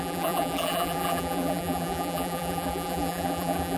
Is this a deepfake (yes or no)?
yes